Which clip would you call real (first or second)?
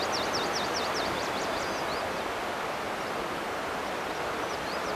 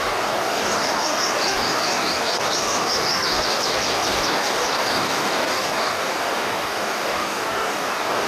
first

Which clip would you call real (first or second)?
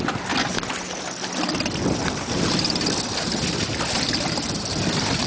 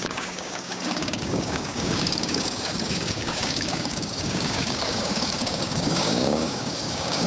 first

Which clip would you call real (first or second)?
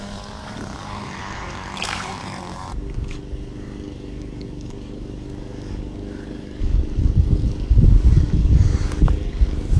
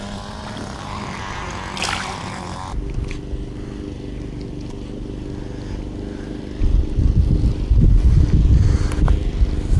second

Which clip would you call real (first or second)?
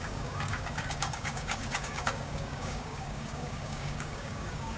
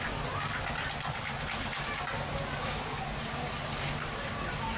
second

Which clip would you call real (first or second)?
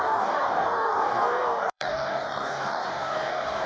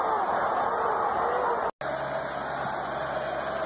second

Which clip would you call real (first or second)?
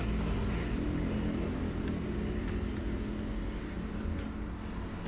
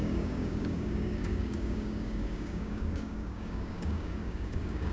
first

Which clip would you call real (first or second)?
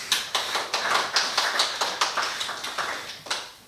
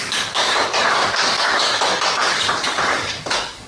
first